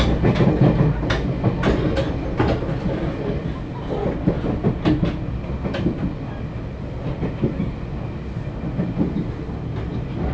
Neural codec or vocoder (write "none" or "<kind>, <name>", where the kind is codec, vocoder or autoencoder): none